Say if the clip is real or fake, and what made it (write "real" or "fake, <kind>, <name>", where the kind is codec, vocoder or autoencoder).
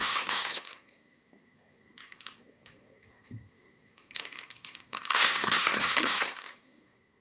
fake, codec, SNAC